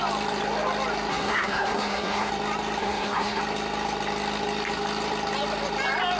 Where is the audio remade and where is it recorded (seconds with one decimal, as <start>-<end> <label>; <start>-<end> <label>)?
0.0-1.1 recorded; 1.1-2.3 remade; 2.3-2.8 recorded; 2.8-3.4 remade; 3.4-6.2 recorded